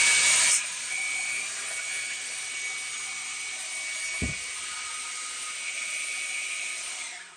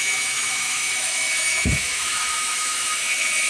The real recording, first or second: first